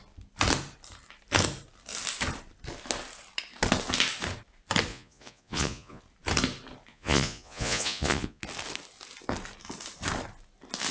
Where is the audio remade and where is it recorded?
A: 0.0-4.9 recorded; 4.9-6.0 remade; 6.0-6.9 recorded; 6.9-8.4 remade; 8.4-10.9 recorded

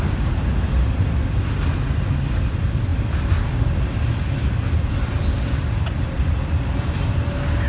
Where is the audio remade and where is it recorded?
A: 0.0-7.7 recorded

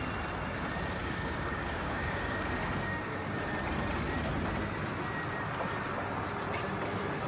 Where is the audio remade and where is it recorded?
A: 0.0-1.0 recorded; 1.0-3.2 remade; 3.2-7.3 recorded

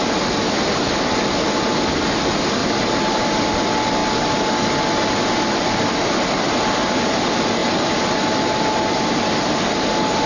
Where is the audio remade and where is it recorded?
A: 0.0-0.9 remade; 0.9-2.6 recorded; 2.6-3.6 remade; 3.6-7.6 recorded; 7.6-10.3 remade

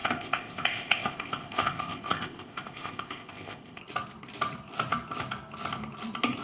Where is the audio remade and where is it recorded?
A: 0.0-3.8 remade; 3.8-6.4 recorded

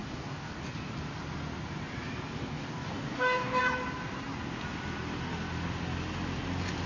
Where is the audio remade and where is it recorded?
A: 0.0-0.5 remade; 0.5-2.4 recorded; 2.4-3.6 remade; 3.6-6.9 recorded

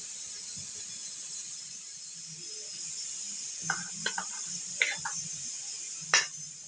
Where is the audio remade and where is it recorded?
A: 0.0-6.7 recorded

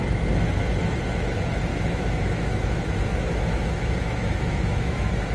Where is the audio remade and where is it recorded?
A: 0.0-1.7 recorded; 1.7-5.3 remade